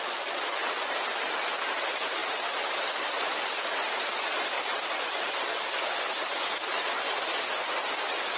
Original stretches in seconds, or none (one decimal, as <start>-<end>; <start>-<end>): 0.0-8.4